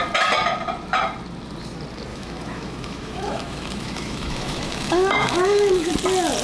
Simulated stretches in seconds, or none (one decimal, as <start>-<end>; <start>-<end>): 2.1-5.9